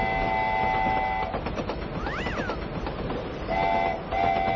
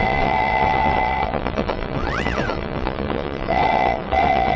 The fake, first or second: second